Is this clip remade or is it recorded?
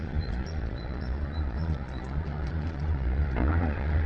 remade